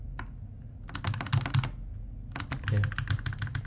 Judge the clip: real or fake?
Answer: real